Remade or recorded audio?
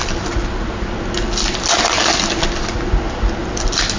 recorded